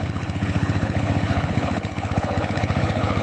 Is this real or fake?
fake